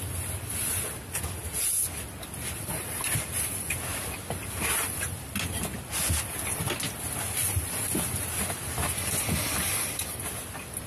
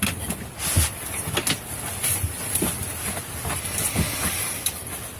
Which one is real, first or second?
second